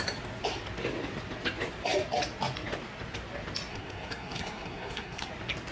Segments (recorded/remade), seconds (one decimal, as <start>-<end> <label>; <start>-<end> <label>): 0.0-3.7 recorded; 3.7-5.3 remade; 5.3-5.7 recorded